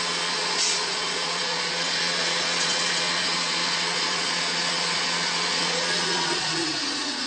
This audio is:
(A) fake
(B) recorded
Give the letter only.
A